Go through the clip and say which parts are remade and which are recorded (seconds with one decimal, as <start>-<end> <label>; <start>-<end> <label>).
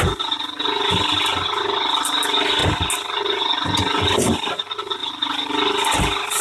0.0-6.4 recorded